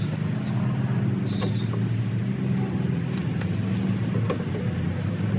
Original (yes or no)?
yes